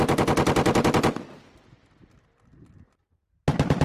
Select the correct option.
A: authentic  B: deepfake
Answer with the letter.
A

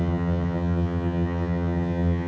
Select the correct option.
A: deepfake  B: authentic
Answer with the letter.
A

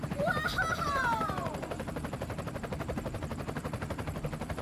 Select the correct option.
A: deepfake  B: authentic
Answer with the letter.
A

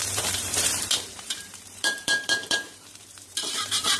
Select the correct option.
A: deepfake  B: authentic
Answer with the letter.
A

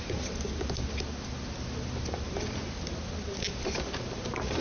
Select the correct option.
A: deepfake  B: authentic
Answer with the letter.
B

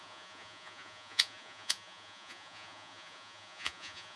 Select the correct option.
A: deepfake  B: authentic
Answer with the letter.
A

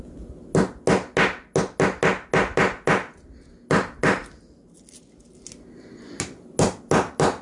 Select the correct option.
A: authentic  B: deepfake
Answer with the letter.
A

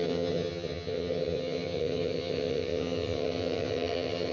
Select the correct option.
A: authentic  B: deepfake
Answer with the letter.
B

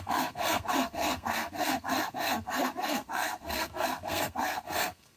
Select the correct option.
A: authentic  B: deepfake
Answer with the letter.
B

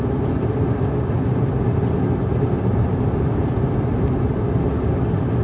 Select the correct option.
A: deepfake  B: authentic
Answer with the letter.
B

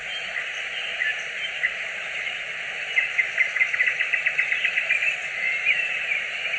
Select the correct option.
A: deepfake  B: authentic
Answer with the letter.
B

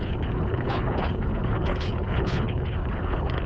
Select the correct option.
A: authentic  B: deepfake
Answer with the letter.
B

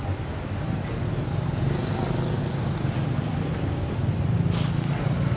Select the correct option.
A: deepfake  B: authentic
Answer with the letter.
B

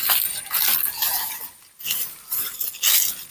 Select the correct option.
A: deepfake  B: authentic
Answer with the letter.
B